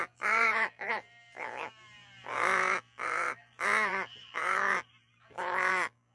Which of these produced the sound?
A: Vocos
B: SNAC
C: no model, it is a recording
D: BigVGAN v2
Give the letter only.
D